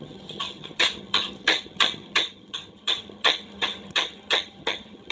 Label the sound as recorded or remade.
remade